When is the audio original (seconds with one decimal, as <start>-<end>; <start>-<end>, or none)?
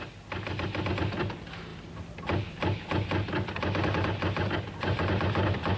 0.0-5.8